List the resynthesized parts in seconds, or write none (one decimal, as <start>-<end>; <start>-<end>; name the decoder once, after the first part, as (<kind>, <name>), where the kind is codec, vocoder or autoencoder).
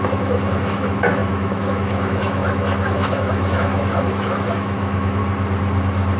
0.0-5.2 (autoencoder, DAC-VAE)